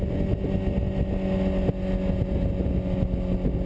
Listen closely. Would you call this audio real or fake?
real